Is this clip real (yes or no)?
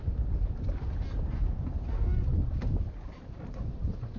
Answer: yes